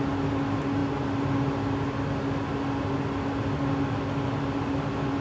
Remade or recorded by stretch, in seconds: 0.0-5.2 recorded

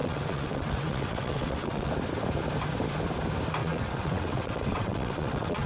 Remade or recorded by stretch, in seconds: 0.0-1.9 remade; 1.9-3.6 recorded; 3.6-5.7 remade

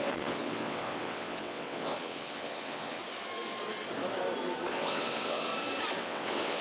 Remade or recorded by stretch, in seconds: 0.0-3.0 remade; 3.0-4.7 recorded; 4.7-5.5 remade; 5.5-6.0 recorded; 6.0-6.6 remade

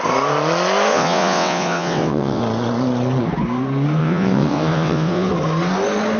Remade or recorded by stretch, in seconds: 0.0-0.9 recorded; 0.9-2.4 remade; 2.4-4.0 recorded; 4.0-5.3 remade; 5.3-6.2 recorded